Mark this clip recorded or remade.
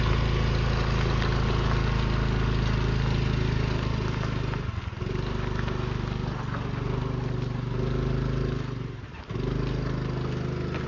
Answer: recorded